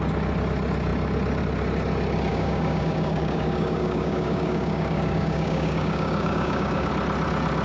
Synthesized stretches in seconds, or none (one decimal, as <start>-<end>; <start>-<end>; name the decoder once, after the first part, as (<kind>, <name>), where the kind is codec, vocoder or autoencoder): 2.3-6.9 (codec, DAC)